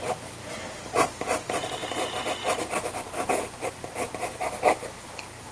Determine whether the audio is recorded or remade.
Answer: recorded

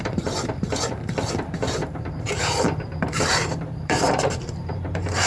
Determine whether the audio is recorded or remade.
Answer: remade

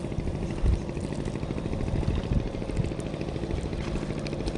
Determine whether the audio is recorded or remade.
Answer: recorded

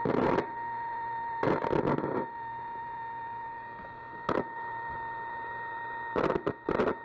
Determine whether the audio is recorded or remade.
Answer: recorded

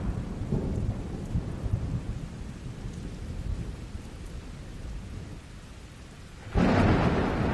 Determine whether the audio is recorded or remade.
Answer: recorded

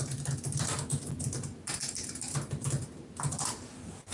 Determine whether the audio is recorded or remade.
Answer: recorded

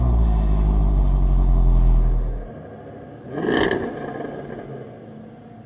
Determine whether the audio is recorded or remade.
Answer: recorded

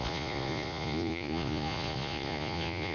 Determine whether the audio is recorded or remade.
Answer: remade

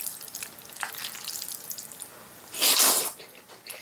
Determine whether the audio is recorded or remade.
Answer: recorded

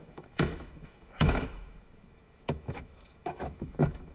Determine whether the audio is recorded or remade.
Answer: remade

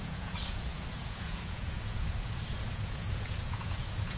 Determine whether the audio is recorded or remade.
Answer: remade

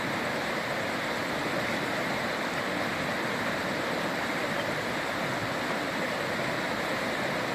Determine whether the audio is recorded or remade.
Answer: recorded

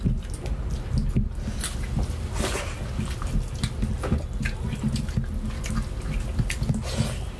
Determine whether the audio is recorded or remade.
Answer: recorded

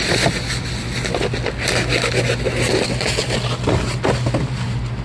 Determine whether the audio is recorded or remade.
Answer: recorded